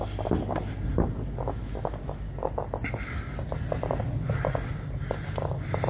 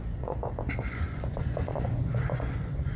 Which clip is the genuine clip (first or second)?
first